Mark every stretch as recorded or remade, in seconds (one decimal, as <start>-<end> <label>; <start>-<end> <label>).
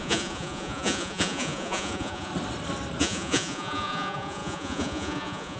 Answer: 0.0-2.3 remade; 2.3-3.0 recorded; 3.0-5.6 remade